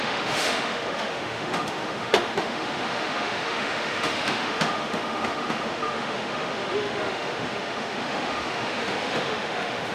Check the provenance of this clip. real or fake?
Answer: fake